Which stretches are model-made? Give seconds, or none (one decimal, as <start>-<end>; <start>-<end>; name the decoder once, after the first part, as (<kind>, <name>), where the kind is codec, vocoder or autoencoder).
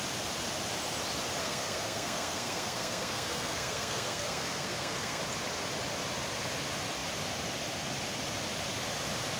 1.4-5.2 (codec, SNAC)